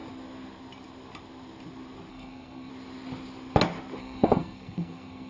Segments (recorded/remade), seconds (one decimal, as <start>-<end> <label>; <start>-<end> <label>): 0.0-2.1 recorded; 2.1-2.7 remade; 2.7-4.0 recorded; 4.0-5.3 remade